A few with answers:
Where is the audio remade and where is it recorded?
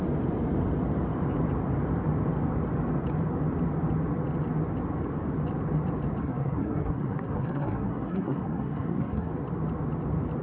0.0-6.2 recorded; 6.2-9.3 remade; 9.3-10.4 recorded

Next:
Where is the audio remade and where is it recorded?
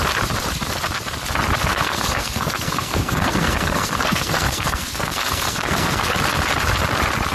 0.0-1.7 recorded; 1.7-6.1 remade; 6.1-7.3 recorded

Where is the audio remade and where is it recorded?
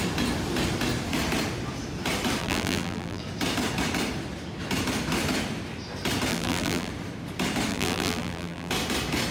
0.0-2.4 recorded; 2.4-3.2 remade; 3.2-6.3 recorded; 6.3-6.9 remade; 6.9-7.7 recorded; 7.7-8.7 remade; 8.7-9.3 recorded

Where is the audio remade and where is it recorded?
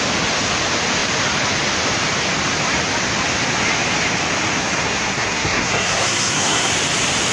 0.0-4.6 recorded; 4.6-6.7 remade; 6.7-7.3 recorded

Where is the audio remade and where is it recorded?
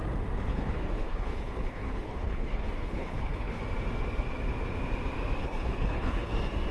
0.0-0.5 recorded; 0.5-3.6 remade; 3.6-5.4 recorded; 5.4-6.3 remade; 6.3-6.7 recorded